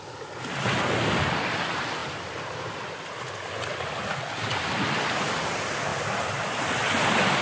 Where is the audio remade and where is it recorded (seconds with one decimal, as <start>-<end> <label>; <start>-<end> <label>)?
0.0-2.0 recorded; 2.0-2.5 remade; 2.5-7.4 recorded